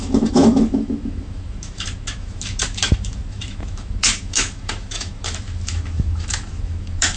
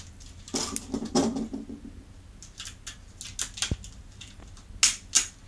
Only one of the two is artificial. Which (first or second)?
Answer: first